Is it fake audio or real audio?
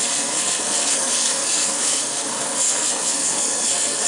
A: fake